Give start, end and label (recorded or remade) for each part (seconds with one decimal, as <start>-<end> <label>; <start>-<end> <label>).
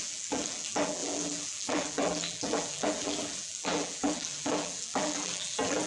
0.0-5.9 remade